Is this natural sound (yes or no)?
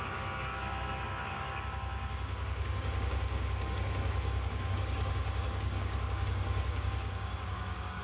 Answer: no